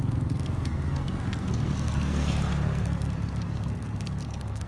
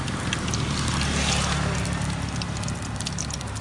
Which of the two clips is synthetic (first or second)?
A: first